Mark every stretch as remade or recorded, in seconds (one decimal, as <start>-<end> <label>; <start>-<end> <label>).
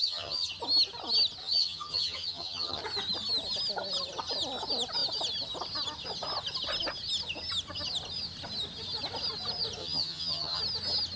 0.0-0.5 remade; 0.5-1.4 recorded; 1.4-2.8 remade; 2.8-9.8 recorded; 9.8-10.6 remade; 10.6-11.2 recorded